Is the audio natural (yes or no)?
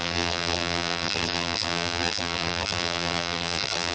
no